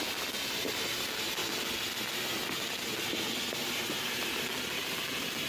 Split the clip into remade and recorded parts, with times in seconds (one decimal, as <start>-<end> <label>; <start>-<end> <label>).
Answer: 0.0-5.5 recorded